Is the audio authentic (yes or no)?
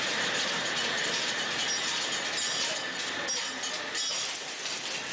yes